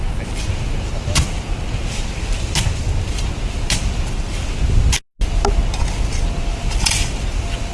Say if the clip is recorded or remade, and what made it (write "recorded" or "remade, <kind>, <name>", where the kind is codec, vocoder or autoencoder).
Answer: recorded